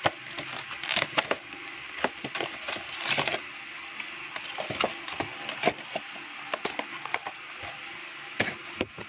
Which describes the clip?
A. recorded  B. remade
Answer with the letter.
A